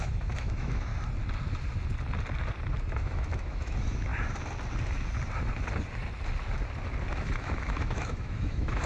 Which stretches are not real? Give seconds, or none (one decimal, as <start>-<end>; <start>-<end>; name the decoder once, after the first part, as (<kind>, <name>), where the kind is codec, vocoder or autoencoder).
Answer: 0.0-0.9 (autoencoder, DAC-VAE); 2.9-4.1; 7.1-8.9